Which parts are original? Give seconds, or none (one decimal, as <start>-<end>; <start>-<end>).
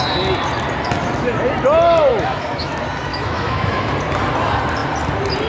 0.0-2.1; 2.7-3.1; 3.9-5.5